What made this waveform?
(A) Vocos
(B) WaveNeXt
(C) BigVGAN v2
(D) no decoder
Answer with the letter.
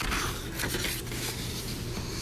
D